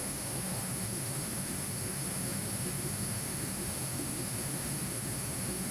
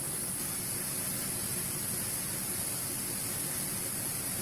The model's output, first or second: first